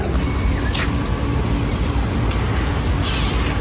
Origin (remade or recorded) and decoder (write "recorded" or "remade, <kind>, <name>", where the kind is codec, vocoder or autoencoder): recorded